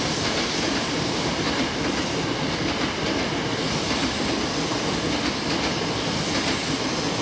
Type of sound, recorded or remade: recorded